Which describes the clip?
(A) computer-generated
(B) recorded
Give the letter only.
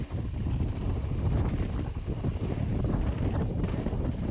B